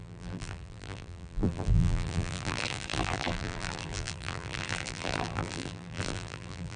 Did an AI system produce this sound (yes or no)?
yes